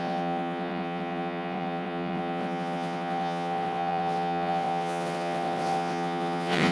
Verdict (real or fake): fake